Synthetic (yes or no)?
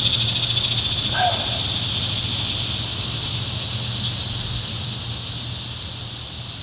no